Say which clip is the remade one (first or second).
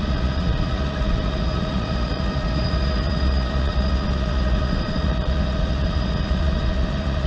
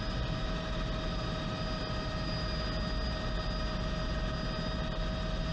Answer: first